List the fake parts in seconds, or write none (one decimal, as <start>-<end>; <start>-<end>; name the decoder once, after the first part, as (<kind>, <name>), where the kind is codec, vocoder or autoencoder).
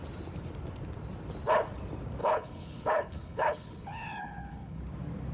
2.2-4.8 (codec, HILCodec)